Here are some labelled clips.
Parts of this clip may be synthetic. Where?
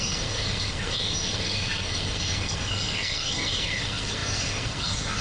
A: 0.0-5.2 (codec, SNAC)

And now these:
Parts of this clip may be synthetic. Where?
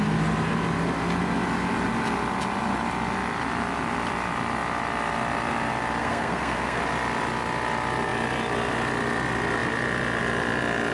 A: 6.0-6.8 (codec, SNAC)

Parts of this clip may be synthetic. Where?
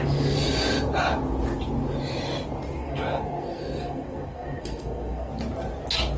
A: 2.8-5.3 (codec, SNAC)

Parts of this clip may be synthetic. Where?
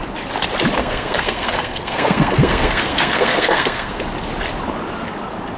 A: 0.8-4.0 (codec, SNAC)